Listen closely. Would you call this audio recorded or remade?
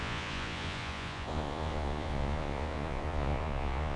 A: remade